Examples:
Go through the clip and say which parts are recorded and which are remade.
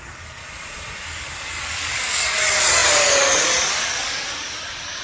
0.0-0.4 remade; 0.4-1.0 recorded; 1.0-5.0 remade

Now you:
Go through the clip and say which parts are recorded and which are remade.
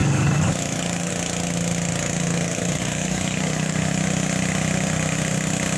0.0-1.1 remade; 1.1-2.3 recorded; 2.3-3.9 remade; 3.9-5.8 recorded